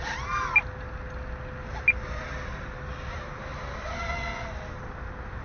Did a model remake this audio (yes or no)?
no